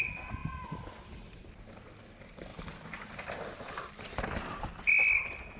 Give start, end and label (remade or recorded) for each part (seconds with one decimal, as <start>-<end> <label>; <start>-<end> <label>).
0.0-5.6 remade